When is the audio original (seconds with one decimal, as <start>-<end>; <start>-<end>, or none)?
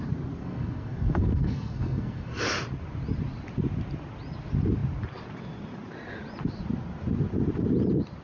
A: 0.0-0.4; 2.4-8.2